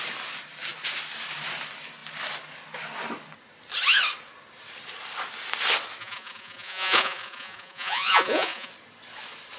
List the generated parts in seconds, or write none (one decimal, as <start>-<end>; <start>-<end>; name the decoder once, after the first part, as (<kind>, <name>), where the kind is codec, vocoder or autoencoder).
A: 6.0-8.7 (vocoder, Vocos)